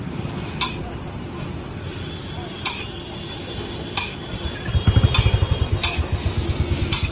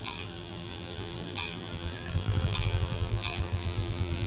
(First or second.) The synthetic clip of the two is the second